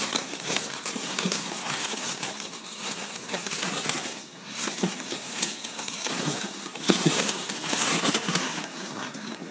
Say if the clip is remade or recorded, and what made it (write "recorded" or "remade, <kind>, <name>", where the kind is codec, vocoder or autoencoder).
remade, codec, SNAC